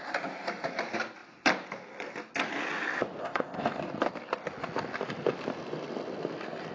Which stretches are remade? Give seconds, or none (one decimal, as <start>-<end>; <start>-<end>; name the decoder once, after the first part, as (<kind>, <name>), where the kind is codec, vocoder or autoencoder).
3.2-3.8 (codec, ZipCodec)